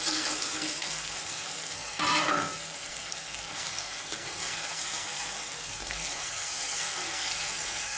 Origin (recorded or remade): remade